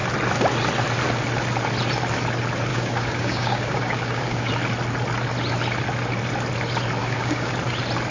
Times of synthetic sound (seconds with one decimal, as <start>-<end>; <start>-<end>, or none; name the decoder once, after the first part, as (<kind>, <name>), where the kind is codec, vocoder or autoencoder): 2.7-4.5 (codec, DAC); 7.0-7.5